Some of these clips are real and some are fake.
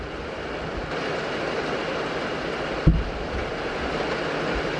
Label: real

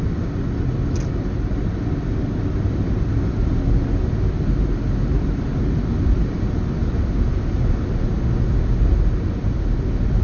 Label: real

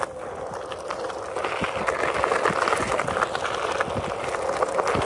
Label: real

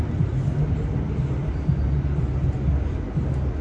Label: real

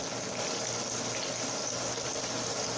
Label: real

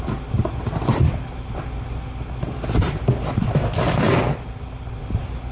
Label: real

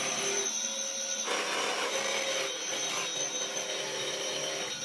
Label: real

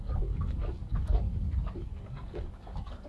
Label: fake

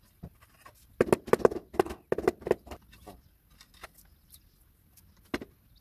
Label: real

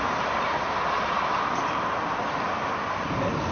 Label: real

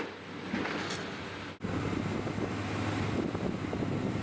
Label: real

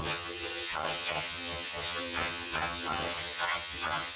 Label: fake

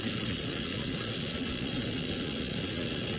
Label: fake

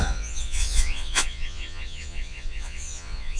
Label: fake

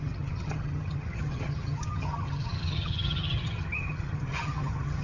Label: fake